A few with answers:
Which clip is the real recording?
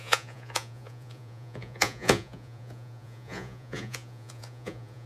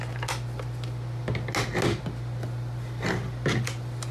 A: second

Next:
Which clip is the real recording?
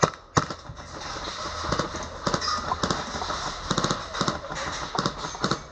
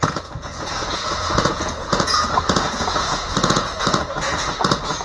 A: first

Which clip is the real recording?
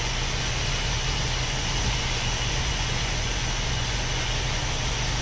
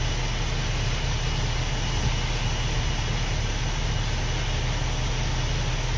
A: second